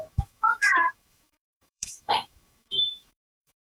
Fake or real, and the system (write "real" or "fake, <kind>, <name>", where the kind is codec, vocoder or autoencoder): fake, autoencoder, DAC-VAE